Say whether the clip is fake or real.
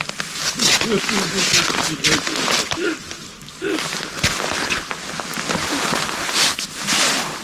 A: real